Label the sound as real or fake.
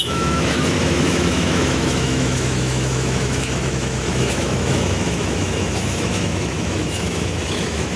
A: fake